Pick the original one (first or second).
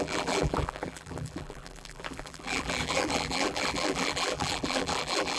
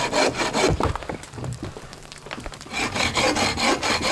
second